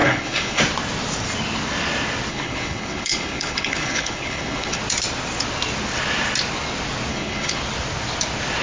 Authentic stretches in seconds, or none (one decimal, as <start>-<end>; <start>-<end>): 0.6-2.3; 4.8-7.1; 7.6-8.6